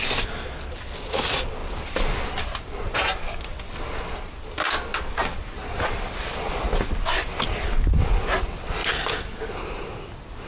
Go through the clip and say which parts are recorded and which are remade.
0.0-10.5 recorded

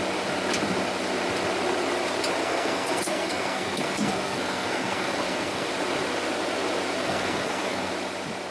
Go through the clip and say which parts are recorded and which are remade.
0.0-2.4 recorded; 2.4-5.7 remade; 5.7-7.0 recorded; 7.0-7.9 remade; 7.9-8.5 recorded

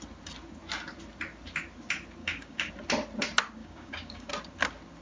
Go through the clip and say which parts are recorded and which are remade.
0.0-2.2 recorded; 2.2-2.7 remade; 2.7-3.6 recorded; 3.6-4.3 remade; 4.3-5.0 recorded

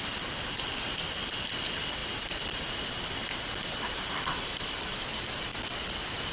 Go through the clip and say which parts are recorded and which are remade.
0.0-6.3 recorded

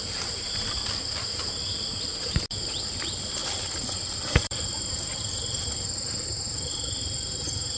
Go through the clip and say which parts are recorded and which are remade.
0.0-2.1 remade; 2.1-3.0 recorded; 3.0-3.4 remade; 3.4-4.3 recorded; 4.3-7.8 remade

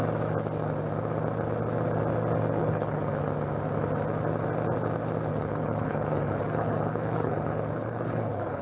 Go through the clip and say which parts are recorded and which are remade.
0.0-2.6 recorded; 2.6-3.2 remade; 3.2-5.3 recorded; 5.3-8.6 remade